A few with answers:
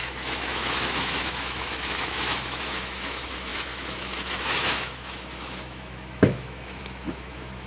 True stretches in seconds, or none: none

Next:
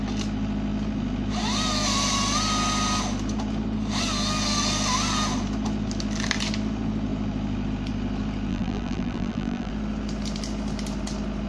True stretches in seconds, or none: 0.0-8.5; 9.7-11.5

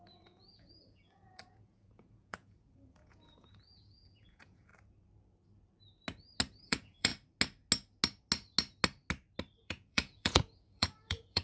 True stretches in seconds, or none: 4.7-6.6; 7.1-9.6

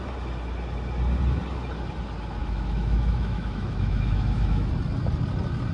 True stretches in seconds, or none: 0.0-2.4; 4.7-5.7

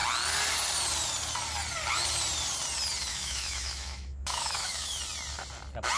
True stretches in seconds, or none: 0.0-3.1; 5.0-6.0

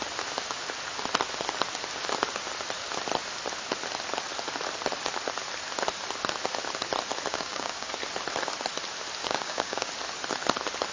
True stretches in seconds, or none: 0.0-7.3; 7.9-9.2; 9.9-10.9

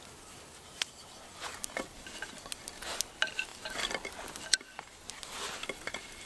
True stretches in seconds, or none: 0.0-6.3